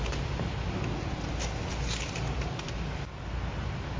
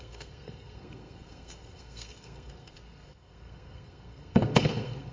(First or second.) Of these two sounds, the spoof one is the second